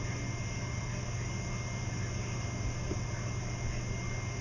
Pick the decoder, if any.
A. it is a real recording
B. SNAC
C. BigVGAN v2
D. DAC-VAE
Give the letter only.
A